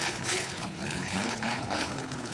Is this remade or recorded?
remade